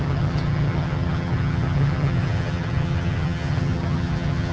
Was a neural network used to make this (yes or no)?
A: yes